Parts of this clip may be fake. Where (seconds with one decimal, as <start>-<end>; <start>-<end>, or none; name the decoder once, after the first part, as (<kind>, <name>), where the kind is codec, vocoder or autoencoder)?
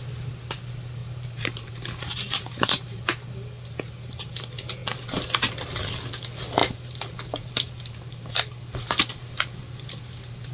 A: 1.0-3.0 (vocoder, BigVGAN v2); 6.6-10.5